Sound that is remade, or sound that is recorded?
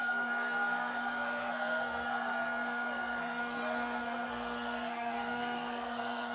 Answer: remade